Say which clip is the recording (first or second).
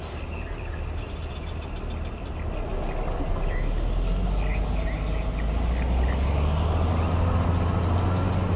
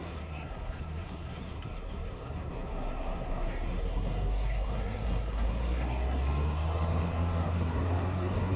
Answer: first